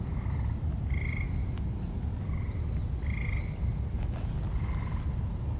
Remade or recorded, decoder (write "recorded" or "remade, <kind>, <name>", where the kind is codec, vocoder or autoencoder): recorded